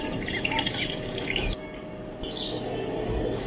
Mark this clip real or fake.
real